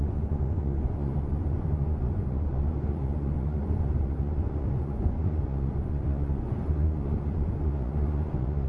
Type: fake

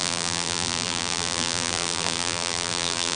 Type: fake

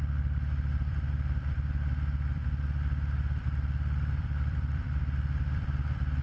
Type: fake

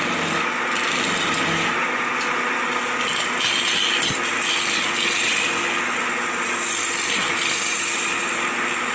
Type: real